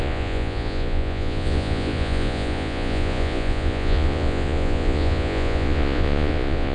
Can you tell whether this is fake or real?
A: fake